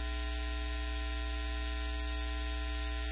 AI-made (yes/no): no